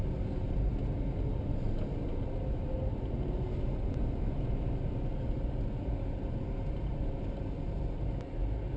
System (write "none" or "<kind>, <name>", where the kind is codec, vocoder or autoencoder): none